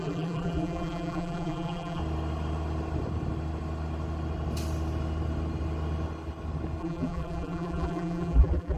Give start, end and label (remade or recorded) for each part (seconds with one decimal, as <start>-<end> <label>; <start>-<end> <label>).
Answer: 0.0-2.0 remade; 2.0-6.8 recorded; 6.8-8.8 remade